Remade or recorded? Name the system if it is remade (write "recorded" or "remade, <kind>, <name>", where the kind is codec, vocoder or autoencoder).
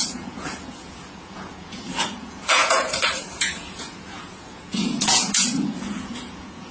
remade, vocoder, Vocos